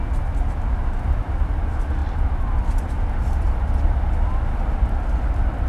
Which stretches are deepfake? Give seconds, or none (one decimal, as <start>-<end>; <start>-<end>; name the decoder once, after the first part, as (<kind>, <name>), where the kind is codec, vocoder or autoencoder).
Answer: 2.0-3.6 (vocoder, BigVGAN v2)